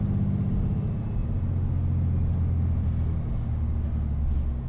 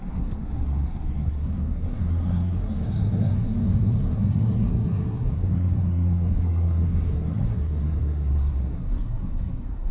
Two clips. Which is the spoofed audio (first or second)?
second